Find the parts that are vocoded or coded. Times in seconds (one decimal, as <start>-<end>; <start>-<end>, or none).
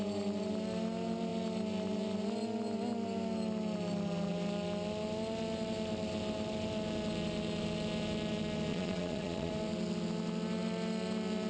8.7-9.5